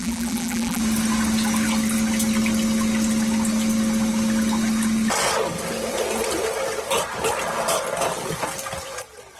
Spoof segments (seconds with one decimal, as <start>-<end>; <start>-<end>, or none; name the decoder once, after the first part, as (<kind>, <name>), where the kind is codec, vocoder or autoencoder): 0.0-0.8 (vocoder, BigVGAN v2)